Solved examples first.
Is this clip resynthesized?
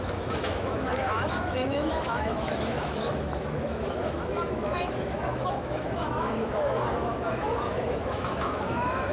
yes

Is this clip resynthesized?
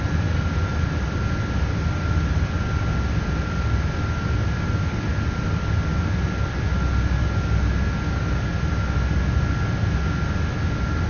no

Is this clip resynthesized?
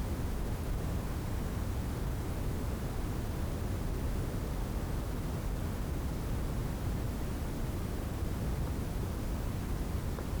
no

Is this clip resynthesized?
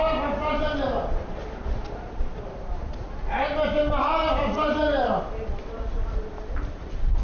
no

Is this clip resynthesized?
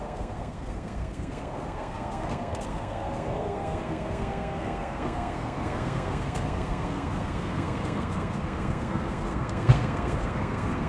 yes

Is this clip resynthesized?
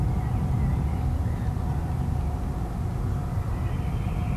no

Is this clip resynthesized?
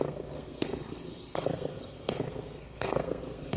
yes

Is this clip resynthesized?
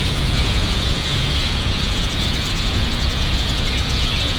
yes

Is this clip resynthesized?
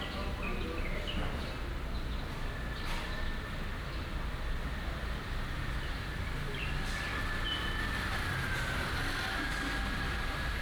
no